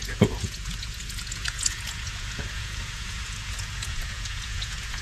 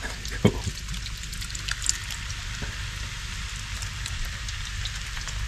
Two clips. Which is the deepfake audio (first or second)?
first